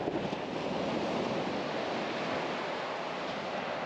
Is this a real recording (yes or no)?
yes